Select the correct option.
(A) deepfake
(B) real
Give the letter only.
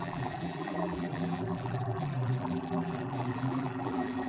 A